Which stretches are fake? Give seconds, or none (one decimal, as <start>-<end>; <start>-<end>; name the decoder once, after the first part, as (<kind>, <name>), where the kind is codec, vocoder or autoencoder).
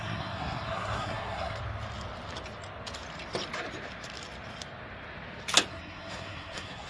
0.0-1.6 (codec, SNAC); 5.7-6.9